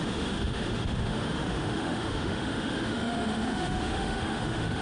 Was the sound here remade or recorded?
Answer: remade